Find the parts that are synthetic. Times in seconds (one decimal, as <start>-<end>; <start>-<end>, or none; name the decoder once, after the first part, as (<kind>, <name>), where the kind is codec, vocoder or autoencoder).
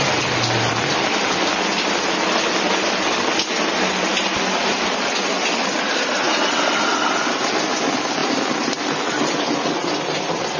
none